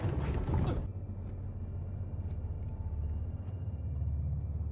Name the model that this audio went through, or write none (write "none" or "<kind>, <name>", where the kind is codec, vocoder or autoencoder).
none